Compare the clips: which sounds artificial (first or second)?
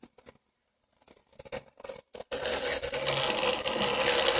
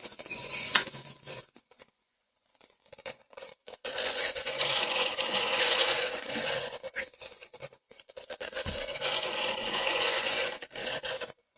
second